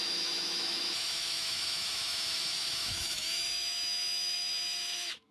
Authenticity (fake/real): fake